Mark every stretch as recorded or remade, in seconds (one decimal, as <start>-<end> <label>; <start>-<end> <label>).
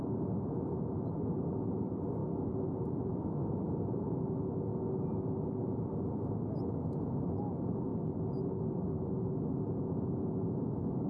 0.0-11.1 recorded